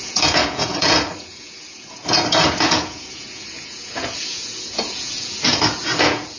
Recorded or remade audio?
remade